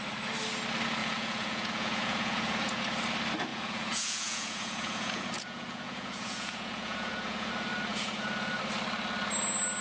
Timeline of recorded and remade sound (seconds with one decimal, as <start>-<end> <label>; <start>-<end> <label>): 0.0-1.0 recorded; 1.0-2.8 remade; 2.8-3.5 recorded; 3.5-7.5 remade; 7.5-7.9 recorded; 7.9-8.6 remade; 8.6-9.8 recorded